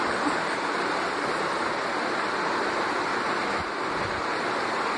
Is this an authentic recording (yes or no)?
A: yes